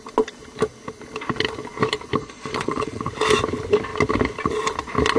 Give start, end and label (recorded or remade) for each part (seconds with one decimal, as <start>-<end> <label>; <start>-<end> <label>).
0.0-2.2 recorded; 2.2-3.0 remade; 3.0-5.2 recorded